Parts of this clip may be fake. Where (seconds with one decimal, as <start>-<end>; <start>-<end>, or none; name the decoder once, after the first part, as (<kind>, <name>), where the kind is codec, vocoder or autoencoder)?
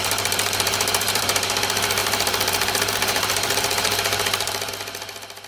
0.0-1.6 (vocoder, BigVGAN v2); 2.0-4.7